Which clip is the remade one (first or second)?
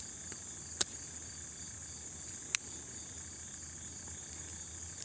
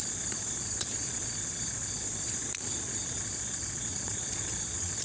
second